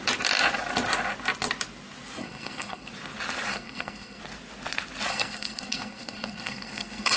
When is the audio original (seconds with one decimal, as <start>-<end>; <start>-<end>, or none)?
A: 0.0-2.2; 2.9-3.5; 4.2-5.1